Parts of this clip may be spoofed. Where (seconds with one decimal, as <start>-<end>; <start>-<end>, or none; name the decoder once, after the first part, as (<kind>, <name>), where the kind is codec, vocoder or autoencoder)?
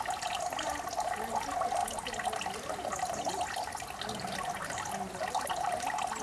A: none